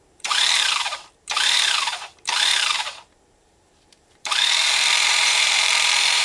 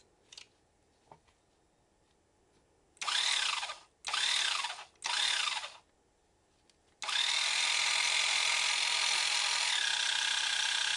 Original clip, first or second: second